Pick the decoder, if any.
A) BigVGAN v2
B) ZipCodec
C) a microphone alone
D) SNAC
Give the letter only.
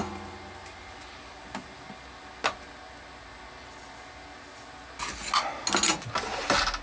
C